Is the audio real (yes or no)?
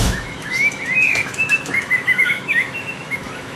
no